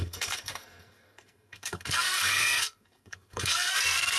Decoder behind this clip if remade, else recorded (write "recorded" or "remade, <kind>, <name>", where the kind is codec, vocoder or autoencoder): remade, codec, SNAC